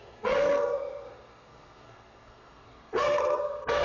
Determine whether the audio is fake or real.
fake